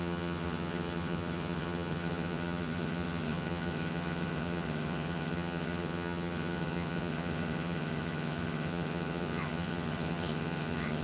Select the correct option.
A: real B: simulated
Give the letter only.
B